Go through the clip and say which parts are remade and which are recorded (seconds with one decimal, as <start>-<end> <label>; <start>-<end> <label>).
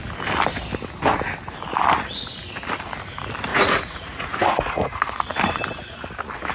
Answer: 0.0-3.5 recorded; 3.5-5.5 remade; 5.5-6.5 recorded